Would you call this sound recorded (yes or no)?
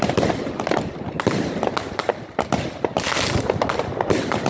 yes